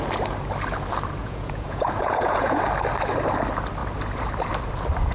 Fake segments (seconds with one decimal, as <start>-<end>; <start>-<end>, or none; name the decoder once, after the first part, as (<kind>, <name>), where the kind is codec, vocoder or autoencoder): 1.2-2.6 (vocoder, Vocos)